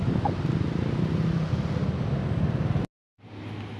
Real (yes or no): yes